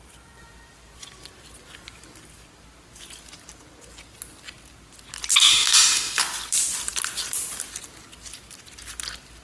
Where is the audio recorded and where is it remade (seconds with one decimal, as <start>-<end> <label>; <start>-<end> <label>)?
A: 0.0-5.5 recorded; 5.5-6.2 remade; 6.2-9.4 recorded